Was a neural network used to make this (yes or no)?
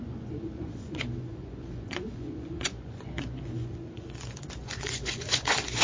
yes